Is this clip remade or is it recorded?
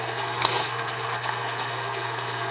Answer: remade